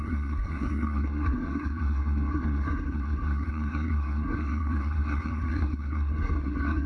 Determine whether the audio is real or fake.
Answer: fake